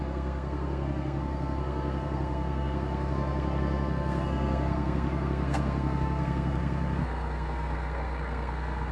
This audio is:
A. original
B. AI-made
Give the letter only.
B